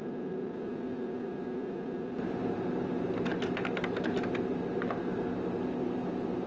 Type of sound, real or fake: real